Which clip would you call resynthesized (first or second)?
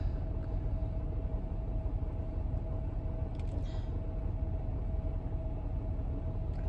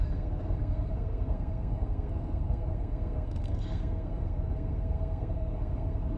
second